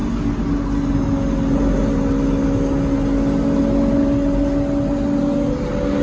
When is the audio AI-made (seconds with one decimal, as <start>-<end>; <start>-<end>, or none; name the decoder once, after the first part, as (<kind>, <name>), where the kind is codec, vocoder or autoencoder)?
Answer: none

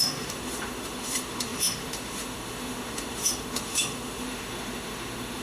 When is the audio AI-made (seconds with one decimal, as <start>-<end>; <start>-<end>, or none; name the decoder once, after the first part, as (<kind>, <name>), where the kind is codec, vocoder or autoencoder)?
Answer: 0.0-5.4 (autoencoder, DAC-VAE)

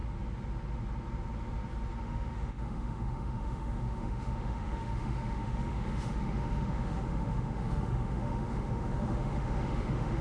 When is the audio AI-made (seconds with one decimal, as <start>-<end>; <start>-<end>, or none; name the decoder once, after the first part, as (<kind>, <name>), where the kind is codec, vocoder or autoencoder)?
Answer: 2.0-10.2 (autoencoder, DAC-VAE)